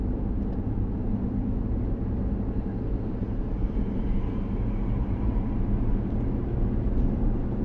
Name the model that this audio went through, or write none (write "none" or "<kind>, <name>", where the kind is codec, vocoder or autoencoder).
vocoder, BigVGAN v2